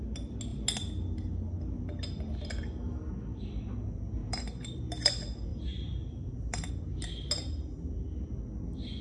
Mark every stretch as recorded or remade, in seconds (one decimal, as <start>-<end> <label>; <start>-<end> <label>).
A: 0.0-4.2 recorded; 4.2-4.8 remade; 4.8-5.5 recorded; 5.5-6.7 remade; 6.7-9.0 recorded